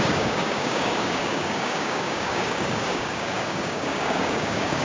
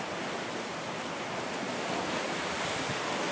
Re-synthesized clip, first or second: first